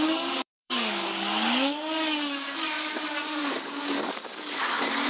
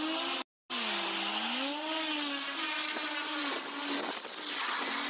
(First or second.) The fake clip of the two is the first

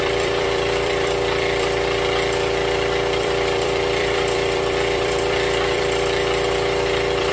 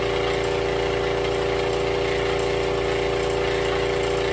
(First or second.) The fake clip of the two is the first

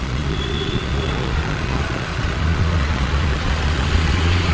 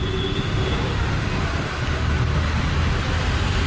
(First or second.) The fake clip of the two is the first